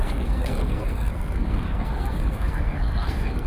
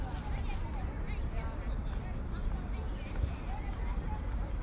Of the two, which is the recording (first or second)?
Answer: second